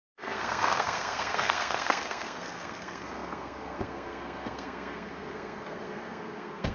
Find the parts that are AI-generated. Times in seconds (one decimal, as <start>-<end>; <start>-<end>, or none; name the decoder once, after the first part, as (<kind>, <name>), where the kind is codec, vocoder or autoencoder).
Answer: 0.0-6.7 (codec, SNAC)